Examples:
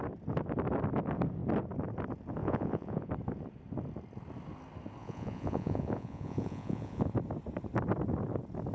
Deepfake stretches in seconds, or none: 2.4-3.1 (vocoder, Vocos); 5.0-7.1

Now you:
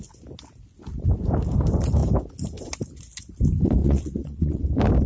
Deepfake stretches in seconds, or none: 3.8-4.6 (vocoder, WaveNeXt)

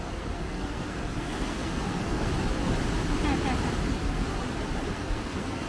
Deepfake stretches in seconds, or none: 0.0-2.3 (codec, SNAC); 3.9-4.3; 4.9-5.7

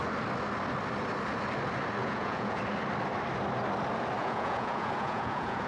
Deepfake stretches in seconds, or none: 2.0-2.6 (vocoder, Vocos); 4.2-5.7